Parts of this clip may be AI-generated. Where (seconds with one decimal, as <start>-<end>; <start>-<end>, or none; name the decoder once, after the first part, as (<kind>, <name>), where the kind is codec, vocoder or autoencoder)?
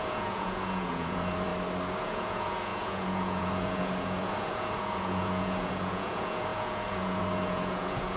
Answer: 0.0-1.5 (vocoder, Vocos); 2.0-8.2